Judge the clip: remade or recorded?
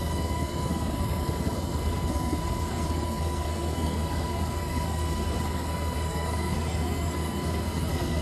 remade